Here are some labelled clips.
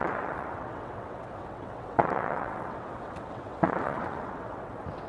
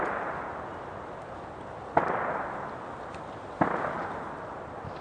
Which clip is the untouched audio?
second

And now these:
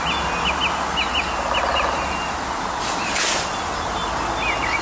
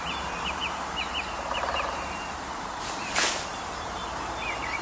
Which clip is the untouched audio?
first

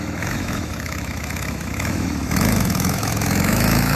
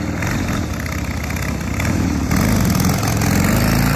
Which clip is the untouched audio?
second